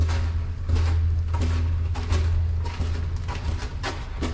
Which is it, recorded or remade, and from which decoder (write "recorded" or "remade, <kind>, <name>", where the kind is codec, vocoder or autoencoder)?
recorded